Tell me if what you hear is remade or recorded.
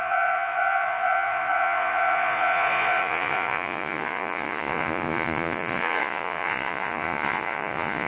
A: remade